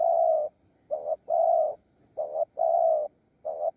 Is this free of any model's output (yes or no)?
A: yes